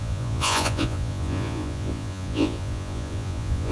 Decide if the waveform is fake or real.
fake